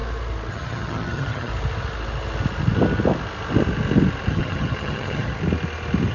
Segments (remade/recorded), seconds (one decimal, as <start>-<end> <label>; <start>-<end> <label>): 0.0-0.5 recorded; 0.5-1.5 remade; 1.5-4.3 recorded; 4.3-5.4 remade; 5.4-6.1 recorded